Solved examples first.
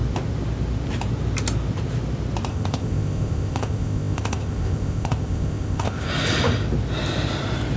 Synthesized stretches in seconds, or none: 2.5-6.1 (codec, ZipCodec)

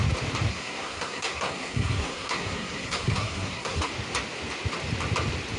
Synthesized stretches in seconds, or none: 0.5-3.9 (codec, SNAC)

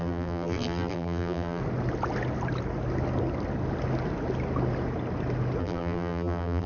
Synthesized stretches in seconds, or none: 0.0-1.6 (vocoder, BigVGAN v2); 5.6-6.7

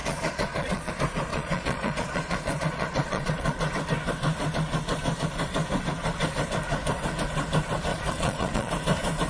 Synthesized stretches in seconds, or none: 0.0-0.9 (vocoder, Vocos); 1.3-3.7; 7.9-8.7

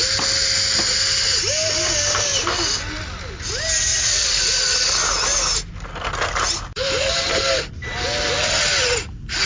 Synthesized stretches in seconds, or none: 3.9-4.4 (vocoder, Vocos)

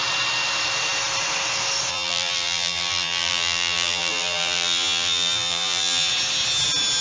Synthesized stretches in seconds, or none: 1.9-6.1 (vocoder, BigVGAN v2)

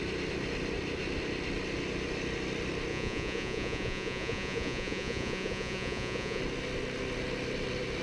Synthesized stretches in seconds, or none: 2.9-6.4 (vocoder, Vocos)